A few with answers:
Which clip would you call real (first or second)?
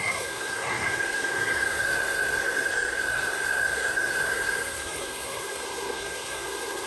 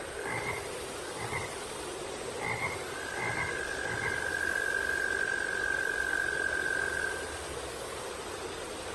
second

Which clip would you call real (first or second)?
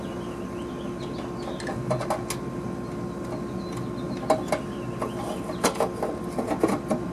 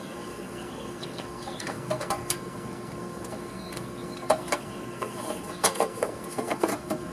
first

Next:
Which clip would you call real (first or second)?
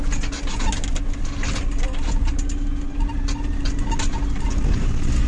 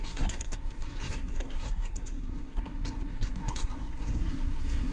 first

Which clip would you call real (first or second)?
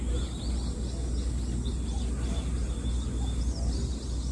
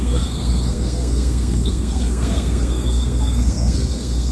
first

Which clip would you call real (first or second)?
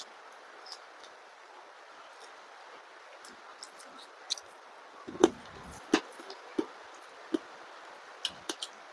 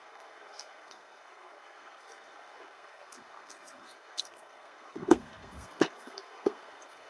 first